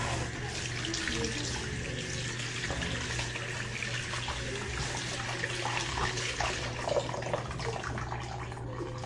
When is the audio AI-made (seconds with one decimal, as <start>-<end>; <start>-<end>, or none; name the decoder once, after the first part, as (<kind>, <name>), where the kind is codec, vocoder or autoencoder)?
5.9-6.6 (codec, HILCodec)